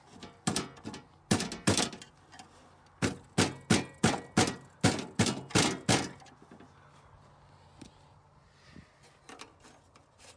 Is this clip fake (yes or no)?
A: no